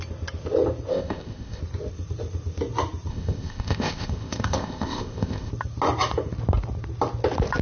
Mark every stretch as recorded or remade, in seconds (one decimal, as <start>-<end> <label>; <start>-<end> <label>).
0.0-0.9 recorded; 0.9-1.6 remade; 1.6-3.1 recorded; 3.1-5.5 remade; 5.5-7.6 recorded